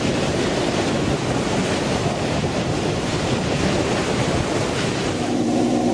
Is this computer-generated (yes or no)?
yes